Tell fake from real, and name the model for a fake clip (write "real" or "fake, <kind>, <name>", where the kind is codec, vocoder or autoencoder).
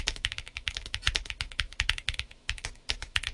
fake, autoencoder, DAC-VAE